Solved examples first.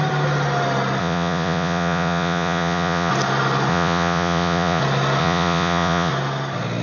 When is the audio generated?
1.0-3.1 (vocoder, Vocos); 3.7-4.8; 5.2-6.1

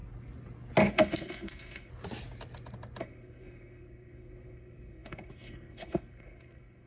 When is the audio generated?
0.9-1.9 (codec, SNAC); 3.0-6.9

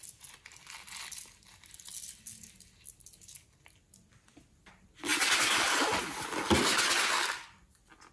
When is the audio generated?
none

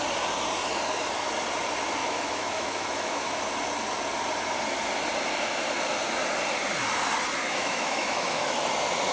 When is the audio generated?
2.0-3.4 (autoencoder, DAC-VAE); 7.4-8.6